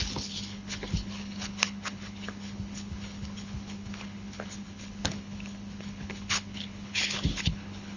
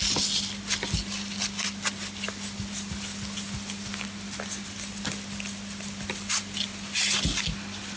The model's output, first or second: first